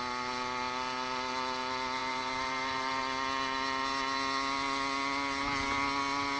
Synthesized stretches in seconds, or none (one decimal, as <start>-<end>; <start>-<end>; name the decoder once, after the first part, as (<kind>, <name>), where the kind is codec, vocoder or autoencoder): 2.0-3.0 (vocoder, BigVGAN v2)